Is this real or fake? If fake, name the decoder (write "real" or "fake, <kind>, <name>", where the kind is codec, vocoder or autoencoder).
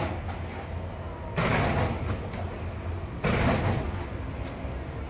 real